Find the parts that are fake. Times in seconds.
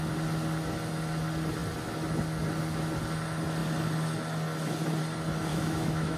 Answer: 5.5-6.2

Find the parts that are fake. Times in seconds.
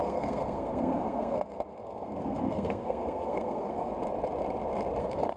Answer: 0.0-3.9; 5.0-5.4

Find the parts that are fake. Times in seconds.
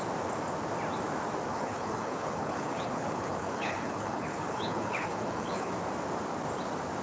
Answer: 1.5-5.7